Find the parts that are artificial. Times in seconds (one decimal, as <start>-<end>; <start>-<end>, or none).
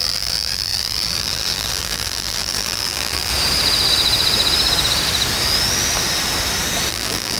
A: 0.0-3.3; 6.9-7.4